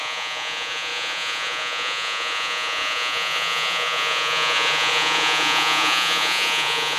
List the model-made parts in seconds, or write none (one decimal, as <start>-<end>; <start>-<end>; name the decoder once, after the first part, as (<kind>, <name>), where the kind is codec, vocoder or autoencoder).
0.0-7.0 (vocoder, Vocos)